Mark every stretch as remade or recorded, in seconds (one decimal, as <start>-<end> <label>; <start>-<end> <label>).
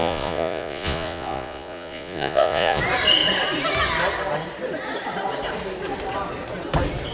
0.0-2.8 remade; 2.8-7.1 recorded